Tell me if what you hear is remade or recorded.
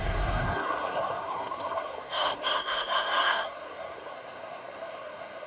remade